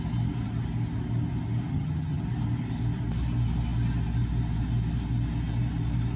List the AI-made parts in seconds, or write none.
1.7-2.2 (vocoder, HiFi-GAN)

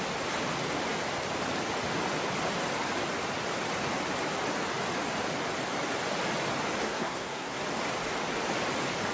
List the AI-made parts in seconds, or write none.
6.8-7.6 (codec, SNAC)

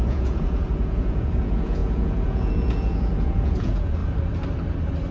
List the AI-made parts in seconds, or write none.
0.0-4.0 (vocoder, Vocos)

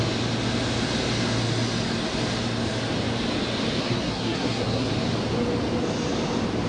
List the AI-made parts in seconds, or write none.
3.8-4.9 (codec, SNAC)

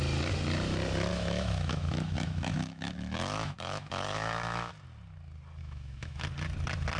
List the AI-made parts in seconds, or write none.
1.1-4.7 (autoencoder, DAC-VAE); 5.6-6.2

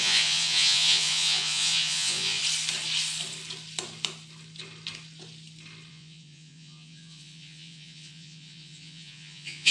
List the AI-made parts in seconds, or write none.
0.0-2.4 (vocoder, Vocos); 5.9-9.7

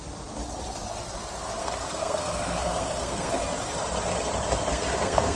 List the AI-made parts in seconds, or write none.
1.6-3.3 (codec, SNAC); 4.7-5.4